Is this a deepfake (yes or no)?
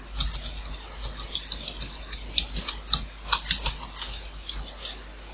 no